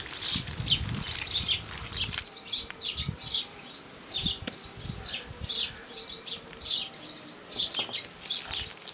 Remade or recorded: recorded